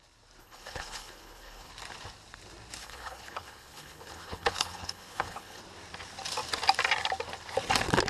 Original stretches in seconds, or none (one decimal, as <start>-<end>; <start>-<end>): 0.0-0.4; 1.7-2.8; 5.6-8.1